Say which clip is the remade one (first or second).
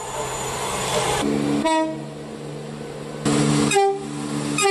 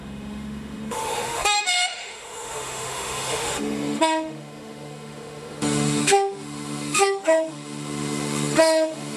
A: second